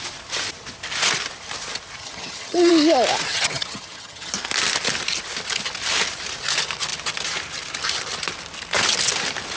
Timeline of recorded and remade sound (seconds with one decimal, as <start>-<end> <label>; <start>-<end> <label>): 0.0-2.0 recorded; 2.0-2.7 remade; 2.7-3.3 recorded; 3.3-4.3 remade; 4.3-9.6 recorded

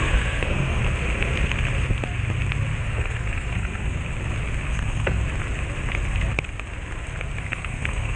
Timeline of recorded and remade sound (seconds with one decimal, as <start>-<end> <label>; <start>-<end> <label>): 0.0-0.8 remade; 0.8-2.8 recorded; 2.8-4.0 remade; 4.0-4.7 recorded; 4.7-5.2 remade; 5.2-7.4 recorded; 7.4-8.2 remade

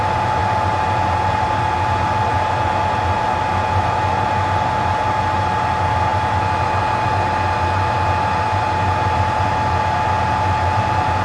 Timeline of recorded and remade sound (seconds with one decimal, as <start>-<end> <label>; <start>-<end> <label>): 0.0-11.2 recorded

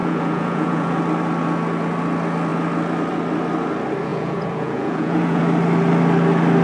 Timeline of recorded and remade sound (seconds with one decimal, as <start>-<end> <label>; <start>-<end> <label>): 0.0-1.0 remade; 1.0-4.1 recorded; 4.1-5.4 remade; 5.4-6.6 recorded

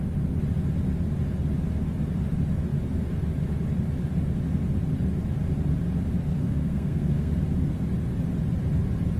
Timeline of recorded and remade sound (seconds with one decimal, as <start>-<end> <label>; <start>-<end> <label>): 0.0-6.2 recorded; 6.2-7.4 remade; 7.4-9.2 recorded

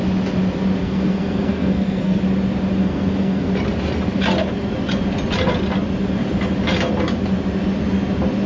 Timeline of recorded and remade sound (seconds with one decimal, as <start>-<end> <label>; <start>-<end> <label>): 0.0-0.8 recorded; 0.8-2.2 remade; 2.2-2.8 recorded; 2.8-3.5 remade; 3.5-8.5 recorded

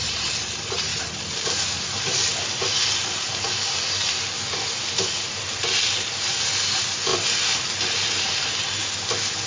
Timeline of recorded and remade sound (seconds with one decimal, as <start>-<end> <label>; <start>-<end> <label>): 0.0-9.5 recorded